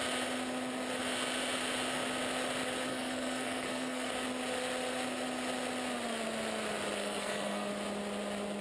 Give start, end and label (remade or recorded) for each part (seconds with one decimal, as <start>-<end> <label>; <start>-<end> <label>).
0.0-2.9 recorded; 2.9-4.1 remade; 4.1-7.0 recorded; 7.0-7.7 remade; 7.7-8.6 recorded